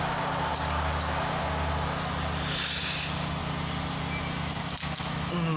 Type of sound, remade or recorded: recorded